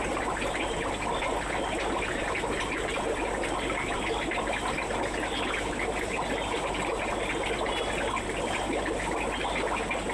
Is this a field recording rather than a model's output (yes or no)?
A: yes